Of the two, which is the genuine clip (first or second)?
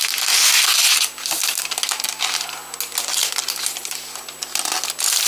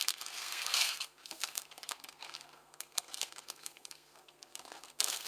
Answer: first